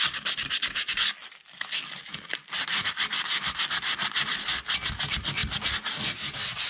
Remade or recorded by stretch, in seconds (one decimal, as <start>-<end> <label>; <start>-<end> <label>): 0.0-6.7 recorded